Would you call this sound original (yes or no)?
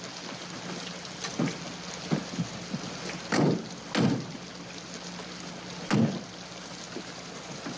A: yes